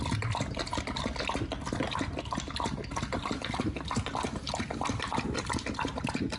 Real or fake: real